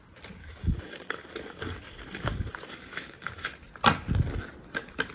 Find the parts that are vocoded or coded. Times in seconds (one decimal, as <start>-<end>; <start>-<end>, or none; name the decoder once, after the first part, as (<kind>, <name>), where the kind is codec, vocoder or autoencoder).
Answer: 0.4-3.5 (codec, DAC)